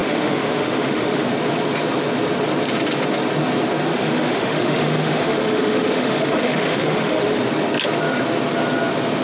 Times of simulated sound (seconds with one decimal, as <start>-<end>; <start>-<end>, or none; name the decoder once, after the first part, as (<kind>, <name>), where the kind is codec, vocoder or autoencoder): 0.0-1.3 (autoencoder, DAC-VAE); 3.9-7.4